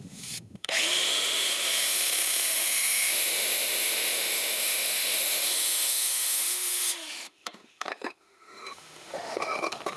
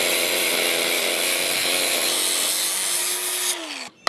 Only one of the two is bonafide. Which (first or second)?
second